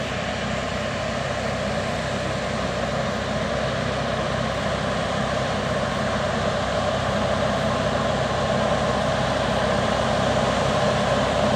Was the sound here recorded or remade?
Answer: recorded